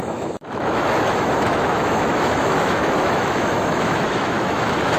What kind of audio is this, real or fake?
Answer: fake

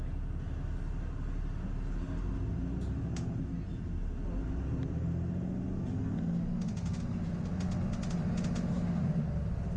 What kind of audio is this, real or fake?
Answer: real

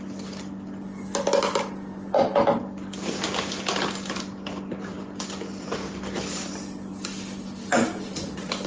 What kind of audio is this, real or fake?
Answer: real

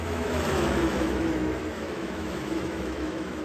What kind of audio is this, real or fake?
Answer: fake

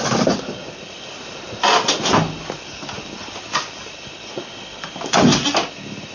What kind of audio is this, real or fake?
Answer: real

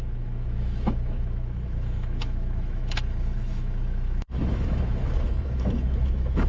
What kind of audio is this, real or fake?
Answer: fake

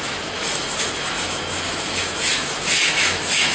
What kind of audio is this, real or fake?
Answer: fake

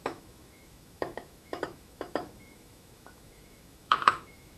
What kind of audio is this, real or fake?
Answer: fake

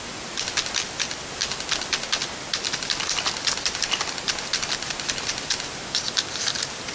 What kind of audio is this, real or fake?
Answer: real